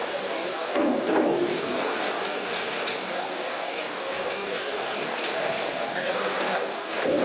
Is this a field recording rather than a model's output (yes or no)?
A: no